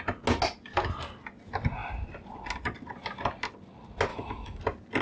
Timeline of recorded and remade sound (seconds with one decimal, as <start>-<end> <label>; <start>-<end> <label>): 0.0-4.1 recorded; 4.1-4.6 remade; 4.6-5.0 recorded